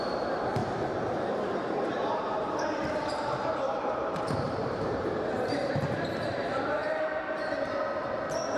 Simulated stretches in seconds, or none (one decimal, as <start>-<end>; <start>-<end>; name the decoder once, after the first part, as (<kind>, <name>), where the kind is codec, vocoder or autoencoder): 0.6-5.7 (vocoder, BigVGAN v2); 6.8-7.5